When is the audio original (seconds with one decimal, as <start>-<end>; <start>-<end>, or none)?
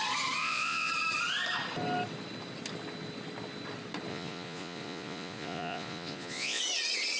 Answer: 0.0-0.4; 0.9-4.1; 6.6-7.2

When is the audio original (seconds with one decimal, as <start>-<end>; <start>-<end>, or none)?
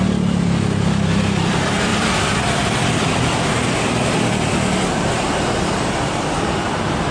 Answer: 0.0-1.9; 5.1-7.1